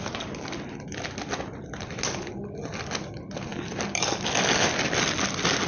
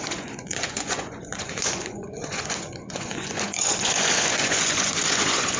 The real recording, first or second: first